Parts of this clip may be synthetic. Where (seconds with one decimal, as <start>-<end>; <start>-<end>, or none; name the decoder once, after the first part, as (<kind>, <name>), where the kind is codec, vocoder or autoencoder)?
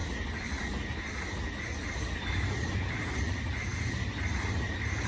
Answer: none